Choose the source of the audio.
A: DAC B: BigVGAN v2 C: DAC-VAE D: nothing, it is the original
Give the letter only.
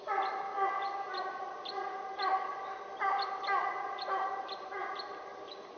D